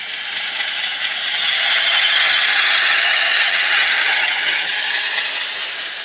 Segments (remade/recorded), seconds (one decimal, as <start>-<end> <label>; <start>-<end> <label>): 0.0-1.3 recorded; 1.3-4.9 remade; 4.9-6.0 recorded